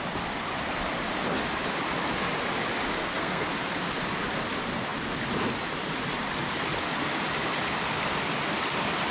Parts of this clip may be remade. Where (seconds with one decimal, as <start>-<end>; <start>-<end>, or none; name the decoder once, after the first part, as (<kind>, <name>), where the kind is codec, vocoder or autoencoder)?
3.0-3.5 (codec, SNAC)